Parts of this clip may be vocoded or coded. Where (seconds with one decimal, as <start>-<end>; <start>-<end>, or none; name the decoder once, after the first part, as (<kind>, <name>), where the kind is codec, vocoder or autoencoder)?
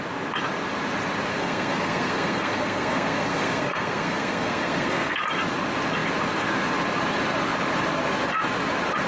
1.3-5.2 (codec, SNAC)